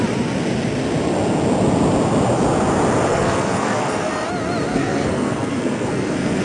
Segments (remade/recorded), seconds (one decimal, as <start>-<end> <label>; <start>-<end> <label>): 0.0-3.1 recorded; 3.1-4.1 remade; 4.1-4.7 recorded; 4.7-6.4 remade